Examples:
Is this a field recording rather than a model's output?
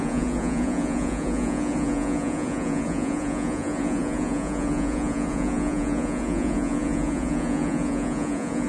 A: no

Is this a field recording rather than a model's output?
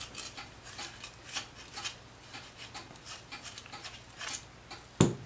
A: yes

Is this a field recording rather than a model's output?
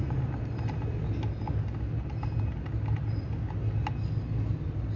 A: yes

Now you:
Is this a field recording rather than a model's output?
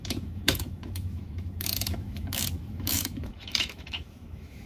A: no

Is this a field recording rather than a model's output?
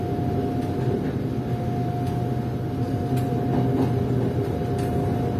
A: yes